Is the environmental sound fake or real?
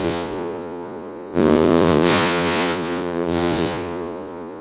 fake